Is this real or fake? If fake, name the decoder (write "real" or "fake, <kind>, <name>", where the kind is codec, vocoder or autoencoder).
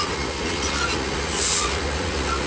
fake, vocoder, Vocos